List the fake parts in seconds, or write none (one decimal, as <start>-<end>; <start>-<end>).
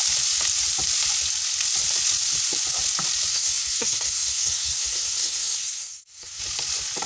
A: 3.3-6.4